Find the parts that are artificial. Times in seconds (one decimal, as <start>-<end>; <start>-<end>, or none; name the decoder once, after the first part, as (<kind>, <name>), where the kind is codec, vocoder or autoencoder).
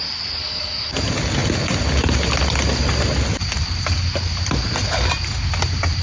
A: 0.4-0.9 (codec, DAC)